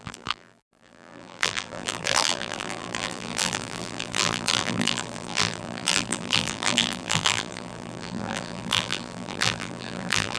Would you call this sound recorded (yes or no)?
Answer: no